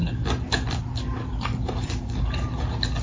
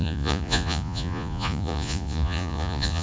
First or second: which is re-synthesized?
second